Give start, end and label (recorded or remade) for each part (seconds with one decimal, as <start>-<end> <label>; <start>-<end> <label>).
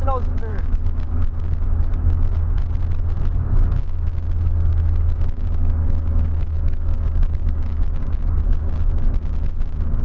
0.0-0.5 recorded; 0.5-2.6 remade; 2.6-4.7 recorded; 4.7-8.4 remade; 8.4-10.0 recorded